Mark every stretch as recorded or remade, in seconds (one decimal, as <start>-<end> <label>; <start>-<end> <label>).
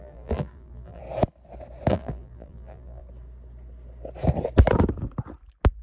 0.0-1.0 remade; 1.0-1.9 recorded; 1.9-3.0 remade; 3.0-5.8 recorded